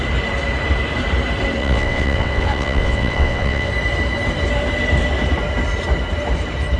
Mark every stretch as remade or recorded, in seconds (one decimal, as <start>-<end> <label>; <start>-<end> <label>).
0.0-1.6 recorded; 1.6-3.7 remade; 3.7-6.8 recorded